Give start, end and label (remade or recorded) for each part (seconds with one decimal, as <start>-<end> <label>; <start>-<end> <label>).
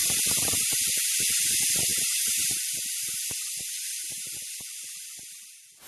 0.0-1.4 remade; 1.4-1.9 recorded; 1.9-4.4 remade; 4.4-5.9 recorded